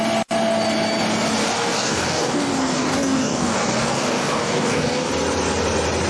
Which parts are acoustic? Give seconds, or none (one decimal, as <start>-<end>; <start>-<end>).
0.0-1.4; 5.1-6.1